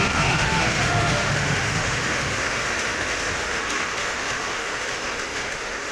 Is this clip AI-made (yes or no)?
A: yes